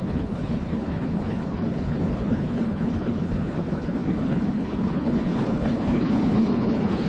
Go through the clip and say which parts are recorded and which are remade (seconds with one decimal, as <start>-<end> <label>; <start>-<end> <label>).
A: 0.0-7.1 remade